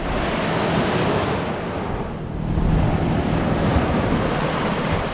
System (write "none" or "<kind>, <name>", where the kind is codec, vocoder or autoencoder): none